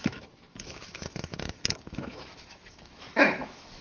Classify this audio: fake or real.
fake